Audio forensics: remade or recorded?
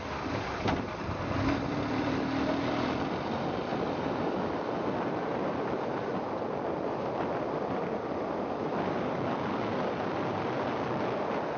recorded